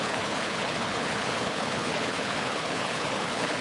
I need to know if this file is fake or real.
fake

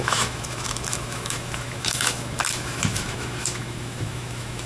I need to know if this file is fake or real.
fake